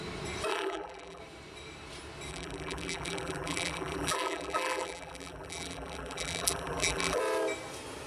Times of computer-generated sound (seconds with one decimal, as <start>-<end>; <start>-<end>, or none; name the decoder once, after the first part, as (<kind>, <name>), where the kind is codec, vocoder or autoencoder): 0.5-1.2 (vocoder, BigVGAN v2); 2.3-7.2